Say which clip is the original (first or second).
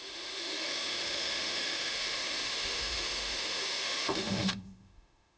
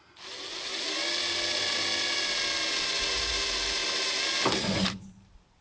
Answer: second